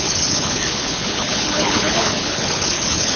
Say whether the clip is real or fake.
fake